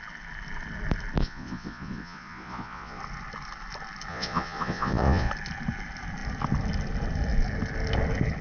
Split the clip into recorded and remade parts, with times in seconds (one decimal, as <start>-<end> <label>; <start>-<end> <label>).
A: 0.0-1.2 recorded; 1.2-3.0 remade; 3.0-4.1 recorded; 4.1-5.3 remade; 5.3-8.4 recorded